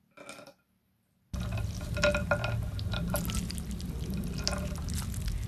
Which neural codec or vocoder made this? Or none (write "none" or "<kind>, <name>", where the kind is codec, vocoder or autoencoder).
none